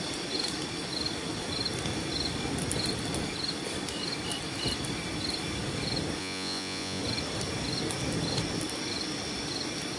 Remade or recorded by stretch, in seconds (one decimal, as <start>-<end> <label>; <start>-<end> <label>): 0.0-6.2 recorded; 6.2-7.0 remade; 7.0-10.0 recorded

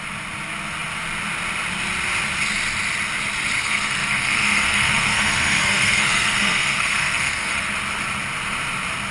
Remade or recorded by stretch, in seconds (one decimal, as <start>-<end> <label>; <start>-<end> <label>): 0.0-3.6 recorded; 3.6-7.7 remade; 7.7-9.1 recorded

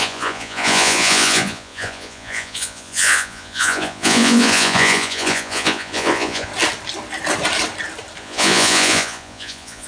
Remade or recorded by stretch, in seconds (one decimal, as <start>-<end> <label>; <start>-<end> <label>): 0.0-6.5 remade; 6.5-8.2 recorded; 8.2-9.9 remade

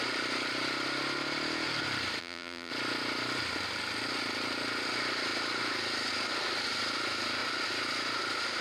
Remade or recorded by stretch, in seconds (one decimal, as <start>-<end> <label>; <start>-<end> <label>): 0.0-2.2 recorded; 2.2-2.7 remade; 2.7-8.6 recorded

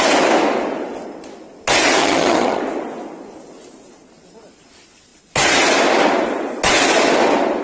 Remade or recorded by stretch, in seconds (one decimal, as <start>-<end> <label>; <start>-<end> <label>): 0.0-2.0 recorded; 2.0-2.6 remade; 2.6-7.6 recorded

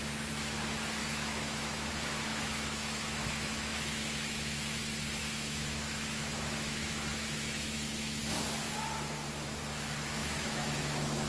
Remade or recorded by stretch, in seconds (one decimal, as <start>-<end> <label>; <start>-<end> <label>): 0.0-1.0 recorded; 1.0-1.9 remade; 1.9-2.3 recorded; 2.3-4.8 remade; 4.8-5.2 recorded; 5.2-8.2 remade; 8.2-10.2 recorded; 10.2-11.3 remade

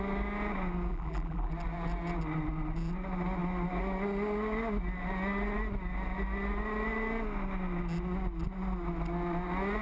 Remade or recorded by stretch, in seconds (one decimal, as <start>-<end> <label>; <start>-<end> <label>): 0.0-0.9 recorded; 0.9-1.5 remade; 1.5-9.8 recorded